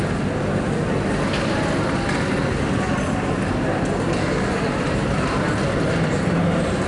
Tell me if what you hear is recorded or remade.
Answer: recorded